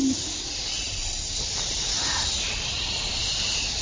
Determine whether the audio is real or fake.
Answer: real